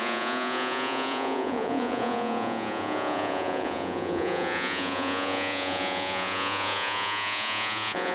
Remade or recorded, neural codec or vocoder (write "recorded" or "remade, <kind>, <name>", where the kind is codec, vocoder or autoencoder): remade, vocoder, Vocos